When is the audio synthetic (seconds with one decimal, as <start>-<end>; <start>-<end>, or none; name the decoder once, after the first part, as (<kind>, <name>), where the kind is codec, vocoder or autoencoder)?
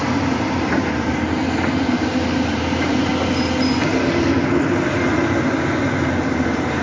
0.0-3.1 (vocoder, BigVGAN v2); 5.8-6.8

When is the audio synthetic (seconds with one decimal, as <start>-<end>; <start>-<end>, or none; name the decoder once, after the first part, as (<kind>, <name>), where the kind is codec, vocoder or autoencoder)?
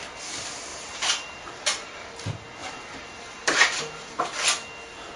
0.7-2.1 (vocoder, BigVGAN v2); 2.6-4.2